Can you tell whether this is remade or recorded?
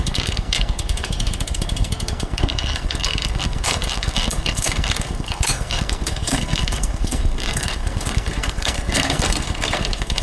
remade